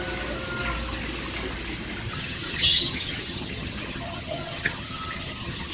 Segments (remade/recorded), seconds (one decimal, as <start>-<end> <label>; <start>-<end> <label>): 0.0-2.1 recorded; 2.1-5.7 remade